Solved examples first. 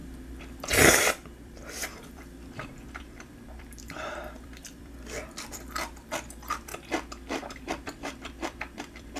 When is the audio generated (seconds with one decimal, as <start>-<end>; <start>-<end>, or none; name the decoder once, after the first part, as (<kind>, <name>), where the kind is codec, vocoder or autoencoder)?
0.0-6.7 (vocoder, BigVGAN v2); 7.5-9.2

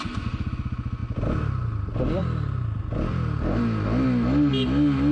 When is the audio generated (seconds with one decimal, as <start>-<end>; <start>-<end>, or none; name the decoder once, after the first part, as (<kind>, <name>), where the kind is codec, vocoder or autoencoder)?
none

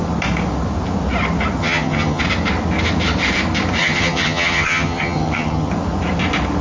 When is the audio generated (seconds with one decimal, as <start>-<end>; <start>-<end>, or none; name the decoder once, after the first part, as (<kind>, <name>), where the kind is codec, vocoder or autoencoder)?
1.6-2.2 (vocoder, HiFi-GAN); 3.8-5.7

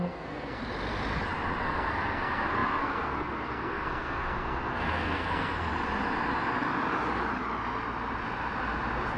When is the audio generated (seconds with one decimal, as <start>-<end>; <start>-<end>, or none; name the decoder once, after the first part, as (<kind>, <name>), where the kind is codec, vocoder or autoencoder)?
0.0-0.6 (codec, SNAC); 1.6-5.7

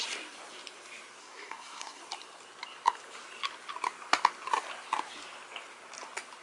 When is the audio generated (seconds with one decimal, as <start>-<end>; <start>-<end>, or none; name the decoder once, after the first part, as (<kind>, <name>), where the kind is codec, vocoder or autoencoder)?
1.2-2.0 (codec, SNAC)